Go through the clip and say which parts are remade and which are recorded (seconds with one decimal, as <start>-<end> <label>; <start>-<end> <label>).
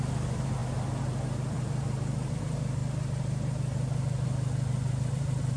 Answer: 0.0-2.8 remade; 2.8-5.1 recorded; 5.1-5.6 remade